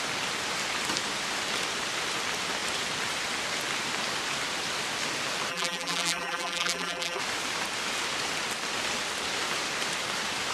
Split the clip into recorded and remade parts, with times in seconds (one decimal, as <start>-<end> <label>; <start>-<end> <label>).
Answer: 0.0-5.5 recorded; 5.5-7.2 remade; 7.2-10.5 recorded